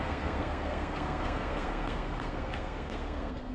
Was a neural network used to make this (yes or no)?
yes